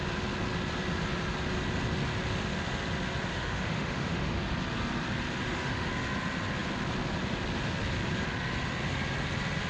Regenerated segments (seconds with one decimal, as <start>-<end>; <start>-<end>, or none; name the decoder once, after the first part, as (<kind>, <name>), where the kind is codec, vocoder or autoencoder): 3.3-4.4 (autoencoder, DAC-VAE); 5.4-5.9